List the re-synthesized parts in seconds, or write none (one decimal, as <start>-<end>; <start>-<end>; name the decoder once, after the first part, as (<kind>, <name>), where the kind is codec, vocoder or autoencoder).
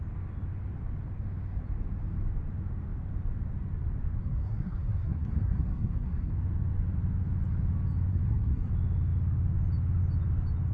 4.2-6.3 (codec, SNAC); 8.1-8.7